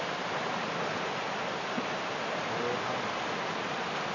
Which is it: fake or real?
real